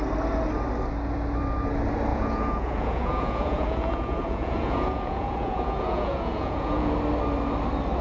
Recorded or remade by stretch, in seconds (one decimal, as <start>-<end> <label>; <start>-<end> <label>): 0.0-2.1 recorded; 2.1-6.9 remade; 6.9-8.0 recorded